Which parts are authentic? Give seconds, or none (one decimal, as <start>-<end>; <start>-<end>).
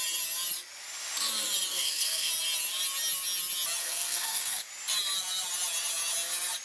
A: 0.0-1.7; 2.3-3.8; 4.7-6.6